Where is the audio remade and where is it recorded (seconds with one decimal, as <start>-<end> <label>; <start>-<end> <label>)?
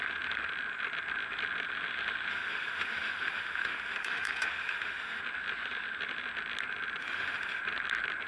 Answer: 0.0-2.3 recorded; 2.3-5.2 remade; 5.2-7.0 recorded; 7.0-7.6 remade; 7.6-8.3 recorded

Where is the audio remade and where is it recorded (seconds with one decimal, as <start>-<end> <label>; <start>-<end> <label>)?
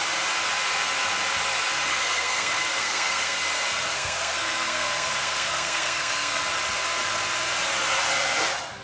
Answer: 0.0-1.9 recorded; 1.9-3.4 remade; 3.4-3.9 recorded; 3.9-6.4 remade; 6.4-8.8 recorded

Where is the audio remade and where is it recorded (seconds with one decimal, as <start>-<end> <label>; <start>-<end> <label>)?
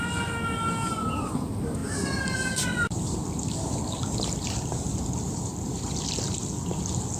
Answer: 0.0-1.8 recorded; 1.8-6.1 remade; 6.1-7.2 recorded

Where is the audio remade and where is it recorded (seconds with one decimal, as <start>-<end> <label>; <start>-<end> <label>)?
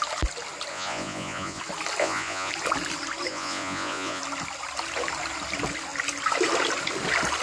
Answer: 0.0-0.7 recorded; 0.7-1.6 remade; 1.6-2.0 recorded; 2.0-2.5 remade; 2.5-3.3 recorded; 3.3-4.2 remade; 4.2-7.4 recorded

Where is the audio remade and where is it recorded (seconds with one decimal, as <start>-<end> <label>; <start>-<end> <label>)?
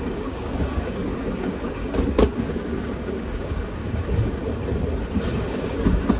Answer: 0.0-1.8 remade; 1.8-2.3 recorded; 2.3-4.4 remade; 4.4-5.2 recorded; 5.2-6.2 remade